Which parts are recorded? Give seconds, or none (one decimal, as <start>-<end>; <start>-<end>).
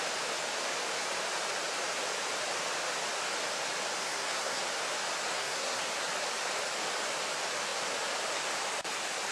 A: 0.0-4.0; 4.6-5.3; 5.8-9.3